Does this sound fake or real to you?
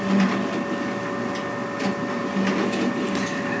fake